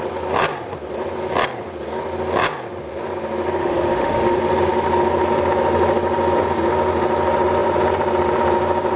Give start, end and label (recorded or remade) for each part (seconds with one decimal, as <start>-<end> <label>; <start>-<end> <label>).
0.0-3.6 recorded; 3.6-4.4 remade; 4.4-9.0 recorded